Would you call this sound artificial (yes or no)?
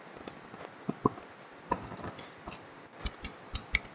no